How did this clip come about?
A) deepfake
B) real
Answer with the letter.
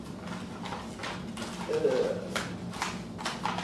B